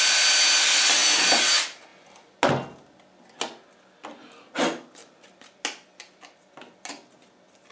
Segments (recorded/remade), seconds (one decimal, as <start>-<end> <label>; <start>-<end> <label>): 0.0-7.7 recorded